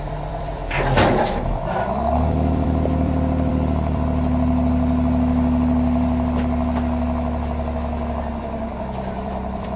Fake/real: fake